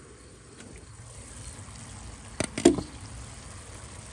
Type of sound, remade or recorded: recorded